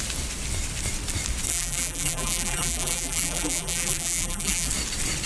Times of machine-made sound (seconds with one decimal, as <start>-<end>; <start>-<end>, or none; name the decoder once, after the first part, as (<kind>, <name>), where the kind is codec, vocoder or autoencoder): 1.5-4.7 (vocoder, BigVGAN v2)